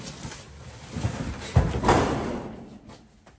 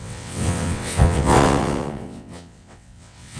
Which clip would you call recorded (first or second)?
first